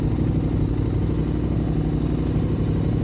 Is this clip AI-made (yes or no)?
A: no